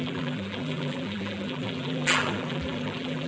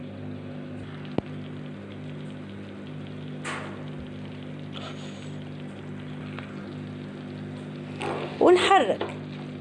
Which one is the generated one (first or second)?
first